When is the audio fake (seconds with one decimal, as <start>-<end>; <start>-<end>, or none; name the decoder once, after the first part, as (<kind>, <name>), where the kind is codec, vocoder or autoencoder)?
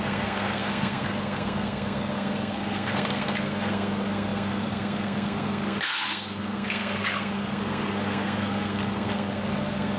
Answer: 0.0-10.0 (codec, SNAC)